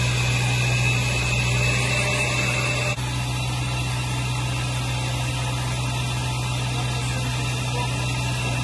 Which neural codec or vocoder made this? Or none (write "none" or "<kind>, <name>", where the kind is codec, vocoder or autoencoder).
none